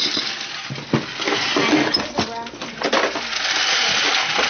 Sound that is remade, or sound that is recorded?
recorded